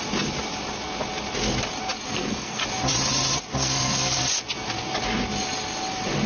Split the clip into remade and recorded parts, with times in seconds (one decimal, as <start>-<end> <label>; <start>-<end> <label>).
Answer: 0.0-2.1 recorded; 2.1-2.6 remade; 2.6-3.5 recorded; 3.5-4.2 remade; 4.2-6.3 recorded